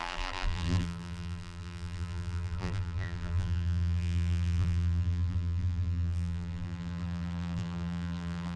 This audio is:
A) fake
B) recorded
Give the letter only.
A